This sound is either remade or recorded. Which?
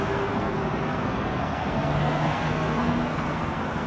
remade